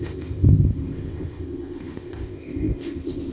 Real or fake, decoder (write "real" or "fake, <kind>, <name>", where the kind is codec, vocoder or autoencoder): fake, codec, ZipCodec